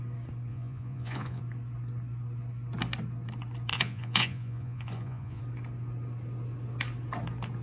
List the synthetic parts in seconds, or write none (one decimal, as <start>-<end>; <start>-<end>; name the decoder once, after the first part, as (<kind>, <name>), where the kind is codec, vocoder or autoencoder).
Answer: 0.5-1.4 (vocoder, Vocos); 3.7-5.4